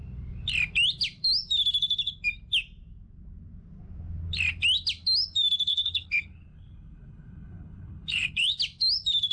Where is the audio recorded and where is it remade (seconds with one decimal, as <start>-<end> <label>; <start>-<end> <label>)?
0.0-5.7 recorded; 5.7-8.6 remade; 8.6-9.3 recorded